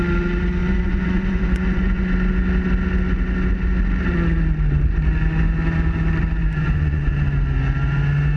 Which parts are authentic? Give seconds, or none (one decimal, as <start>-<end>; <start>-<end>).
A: 0.0-0.6; 2.0-6.4; 7.1-8.4